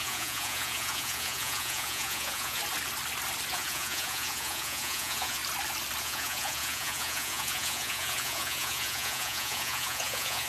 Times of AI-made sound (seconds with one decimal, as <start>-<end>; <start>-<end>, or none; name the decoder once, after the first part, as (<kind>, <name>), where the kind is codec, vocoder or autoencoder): 0.0-2.6 (vocoder, Vocos); 3.5-5.4; 6.0-10.5